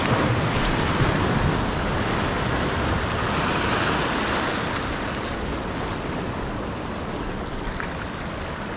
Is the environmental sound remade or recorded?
recorded